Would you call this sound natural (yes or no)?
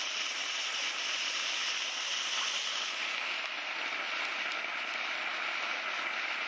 yes